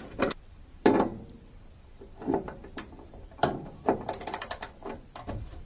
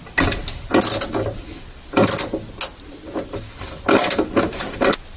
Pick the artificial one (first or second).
first